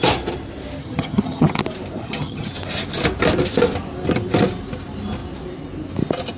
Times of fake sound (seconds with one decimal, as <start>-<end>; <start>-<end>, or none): 0.8-1.6; 2.0-2.5